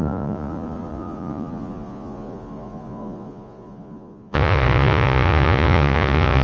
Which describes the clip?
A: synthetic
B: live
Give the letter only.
A